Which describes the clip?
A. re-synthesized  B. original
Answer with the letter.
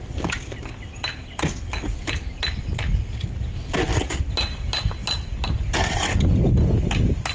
B